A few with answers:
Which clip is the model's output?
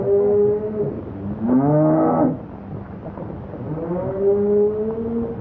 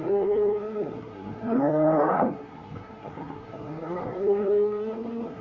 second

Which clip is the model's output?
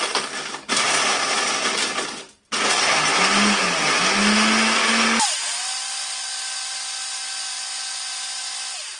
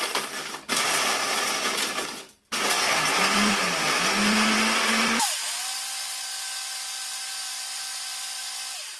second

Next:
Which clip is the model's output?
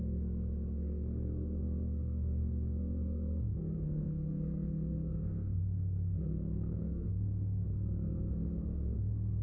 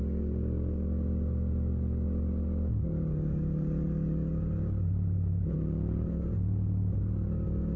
first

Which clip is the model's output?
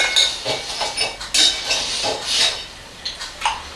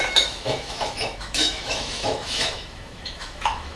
second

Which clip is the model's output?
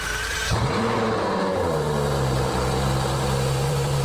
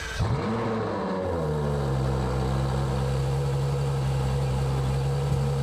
first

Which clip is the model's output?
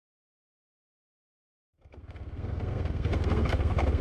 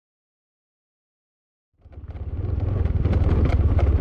first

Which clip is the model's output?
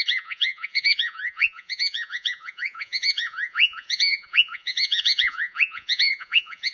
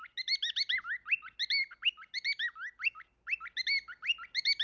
first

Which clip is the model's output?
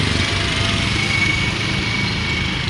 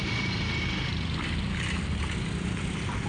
second